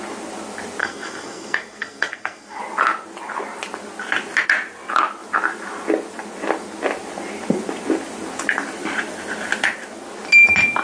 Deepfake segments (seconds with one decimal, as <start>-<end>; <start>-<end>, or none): 0.8-2.6

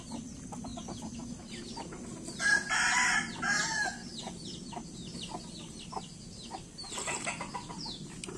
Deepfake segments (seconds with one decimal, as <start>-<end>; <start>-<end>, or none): none

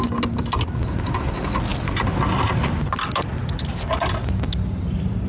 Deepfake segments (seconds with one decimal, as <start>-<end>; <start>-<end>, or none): none

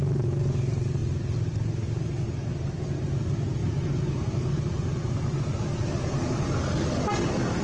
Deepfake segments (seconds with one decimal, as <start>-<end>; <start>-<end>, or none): none

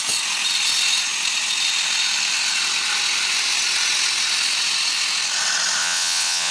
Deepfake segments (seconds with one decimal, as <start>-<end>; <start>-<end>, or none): 5.8-6.5

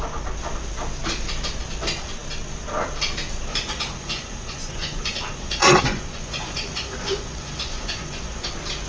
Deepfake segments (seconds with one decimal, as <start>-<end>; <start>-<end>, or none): 3.5-8.5